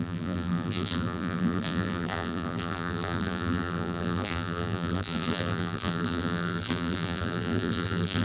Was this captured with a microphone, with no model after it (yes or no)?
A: no